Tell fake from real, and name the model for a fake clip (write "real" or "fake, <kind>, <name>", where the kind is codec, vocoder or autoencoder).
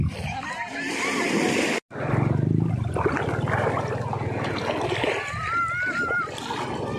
real